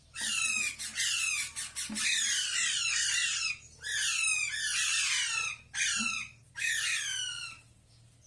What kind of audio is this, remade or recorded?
recorded